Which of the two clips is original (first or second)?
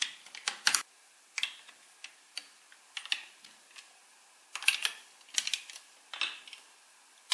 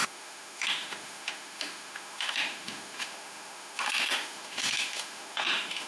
first